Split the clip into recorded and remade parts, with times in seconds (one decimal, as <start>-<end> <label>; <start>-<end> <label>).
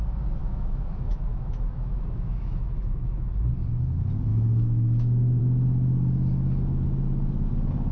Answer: 0.0-0.4 recorded; 0.4-3.3 remade; 3.3-4.3 recorded; 4.3-5.4 remade; 5.4-7.9 recorded